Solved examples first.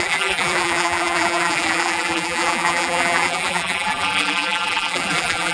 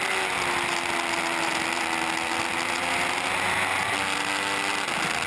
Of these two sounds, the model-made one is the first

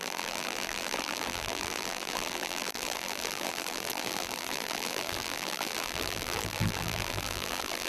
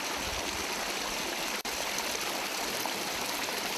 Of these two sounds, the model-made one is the first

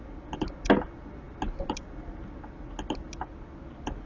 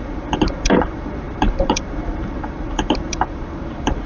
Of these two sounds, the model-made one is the second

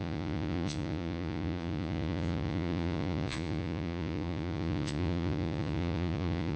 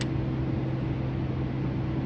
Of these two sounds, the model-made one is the first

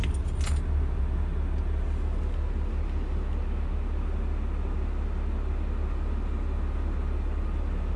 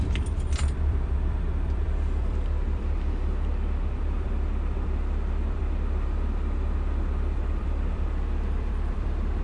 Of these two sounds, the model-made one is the second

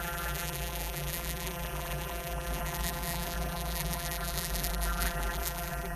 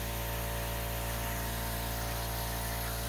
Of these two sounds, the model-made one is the first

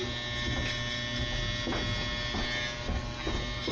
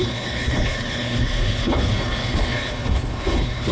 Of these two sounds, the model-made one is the second